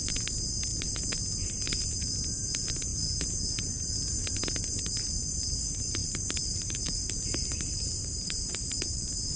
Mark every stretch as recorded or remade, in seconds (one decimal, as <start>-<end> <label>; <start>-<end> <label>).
0.0-6.0 recorded; 6.0-9.0 remade; 9.0-9.4 recorded